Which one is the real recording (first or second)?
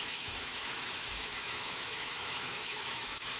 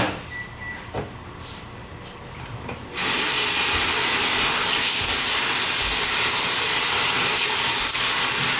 second